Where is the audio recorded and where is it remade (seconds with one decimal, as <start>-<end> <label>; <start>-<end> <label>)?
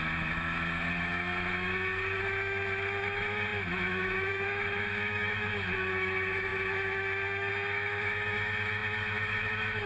0.0-9.9 remade